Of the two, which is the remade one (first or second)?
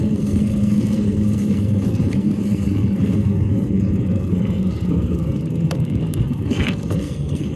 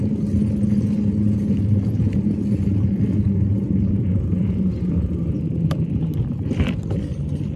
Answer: first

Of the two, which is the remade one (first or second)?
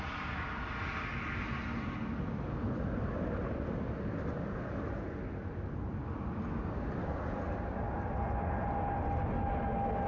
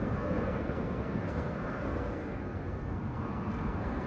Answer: second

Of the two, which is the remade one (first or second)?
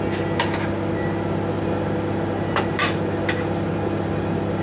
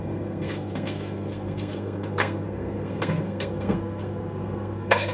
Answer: second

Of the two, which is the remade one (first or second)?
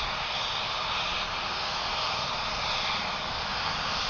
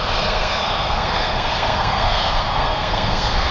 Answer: second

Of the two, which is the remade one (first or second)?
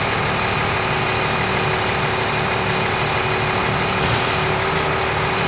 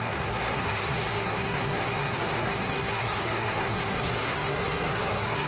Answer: second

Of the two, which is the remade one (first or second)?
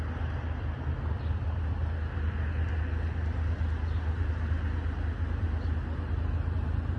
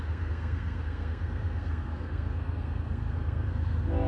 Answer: second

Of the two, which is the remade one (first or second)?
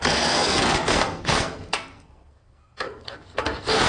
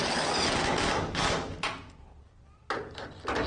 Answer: first